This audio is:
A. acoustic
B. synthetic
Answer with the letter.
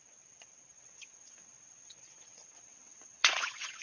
B